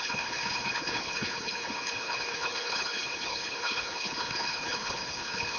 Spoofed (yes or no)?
yes